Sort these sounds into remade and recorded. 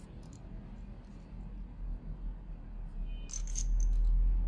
recorded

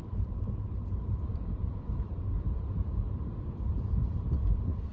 remade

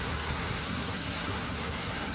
remade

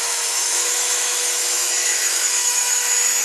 remade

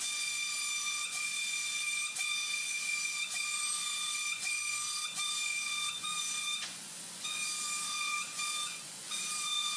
remade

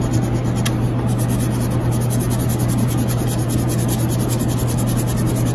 recorded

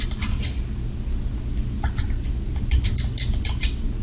recorded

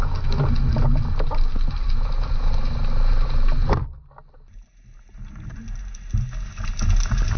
recorded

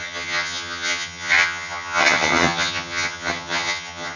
remade